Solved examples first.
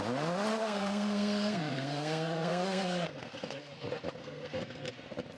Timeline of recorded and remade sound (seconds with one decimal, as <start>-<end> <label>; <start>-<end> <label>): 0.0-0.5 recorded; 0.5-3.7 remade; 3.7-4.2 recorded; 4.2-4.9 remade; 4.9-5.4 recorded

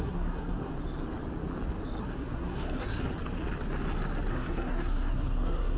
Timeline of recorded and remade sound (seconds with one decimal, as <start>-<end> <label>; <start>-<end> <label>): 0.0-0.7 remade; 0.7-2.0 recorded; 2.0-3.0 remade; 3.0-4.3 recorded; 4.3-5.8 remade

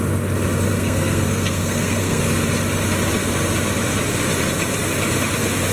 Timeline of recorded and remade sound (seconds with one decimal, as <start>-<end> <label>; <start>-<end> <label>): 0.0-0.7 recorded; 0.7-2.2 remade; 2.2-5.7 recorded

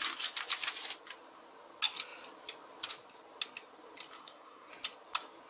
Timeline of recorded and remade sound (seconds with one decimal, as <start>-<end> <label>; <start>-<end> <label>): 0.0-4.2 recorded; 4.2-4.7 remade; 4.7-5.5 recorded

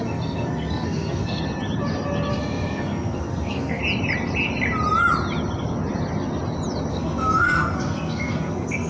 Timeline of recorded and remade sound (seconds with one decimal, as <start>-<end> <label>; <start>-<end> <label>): 0.0-1.4 remade; 1.4-2.3 recorded; 2.3-3.8 remade; 3.8-6.9 recorded; 6.9-8.9 remade